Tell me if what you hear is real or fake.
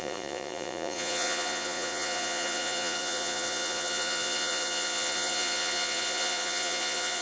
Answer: fake